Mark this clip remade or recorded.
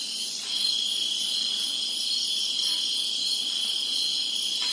remade